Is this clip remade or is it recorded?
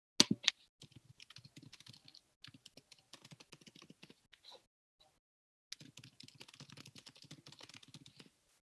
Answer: recorded